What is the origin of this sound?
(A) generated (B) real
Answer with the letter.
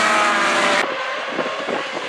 B